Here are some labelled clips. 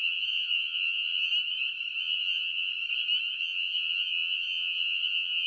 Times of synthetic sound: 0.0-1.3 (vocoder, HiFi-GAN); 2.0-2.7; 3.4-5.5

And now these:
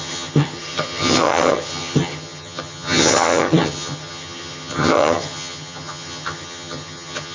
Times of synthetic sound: 0.0-7.3 (vocoder, HiFi-GAN)

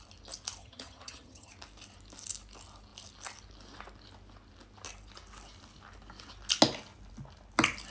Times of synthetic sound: 0.6-1.5 (vocoder, HiFi-GAN)

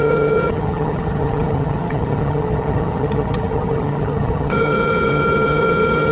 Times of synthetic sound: 0.0-6.1 (vocoder, HiFi-GAN)

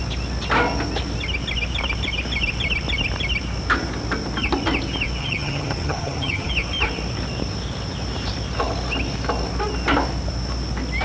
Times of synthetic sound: 5.2-6.5 (vocoder, HiFi-GAN)

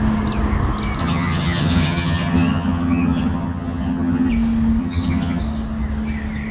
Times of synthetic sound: 1.0-4.3 (vocoder, HiFi-GAN); 4.8-5.4

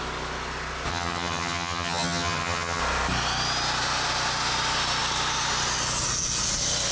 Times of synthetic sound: 0.9-2.8 (vocoder, HiFi-GAN)

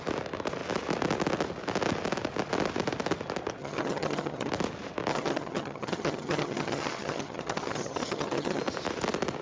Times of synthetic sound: 3.6-4.5 (vocoder, HiFi-GAN); 5.1-8.6